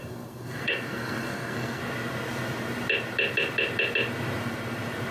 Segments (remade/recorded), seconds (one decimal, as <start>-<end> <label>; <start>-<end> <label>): 0.0-1.8 remade; 1.8-5.1 recorded